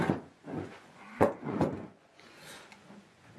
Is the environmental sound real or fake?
fake